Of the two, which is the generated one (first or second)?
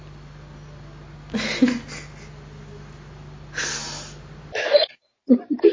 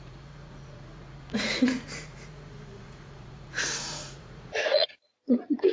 second